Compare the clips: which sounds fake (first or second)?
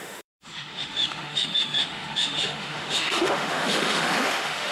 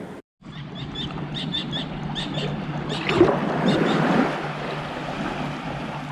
first